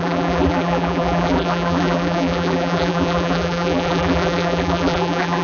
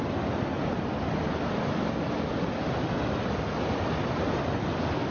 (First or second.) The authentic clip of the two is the second